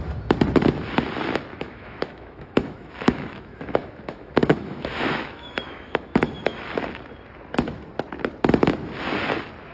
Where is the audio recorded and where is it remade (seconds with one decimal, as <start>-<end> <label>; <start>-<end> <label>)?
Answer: 0.0-1.5 recorded; 1.5-6.8 remade; 6.8-9.7 recorded